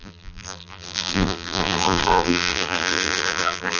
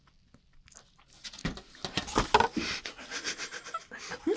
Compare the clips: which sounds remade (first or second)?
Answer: first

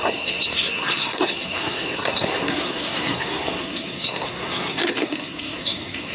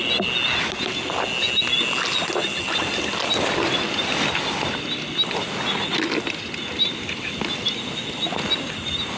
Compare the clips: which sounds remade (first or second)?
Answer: first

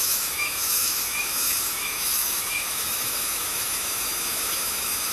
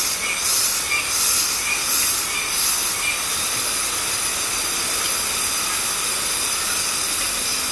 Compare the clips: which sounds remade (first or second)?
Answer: first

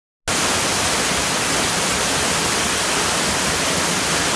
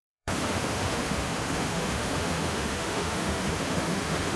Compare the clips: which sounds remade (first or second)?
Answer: second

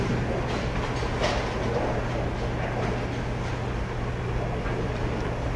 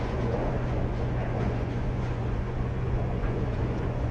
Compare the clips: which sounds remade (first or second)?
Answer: second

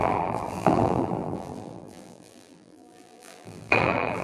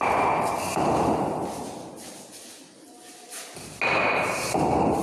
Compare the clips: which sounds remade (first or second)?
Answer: first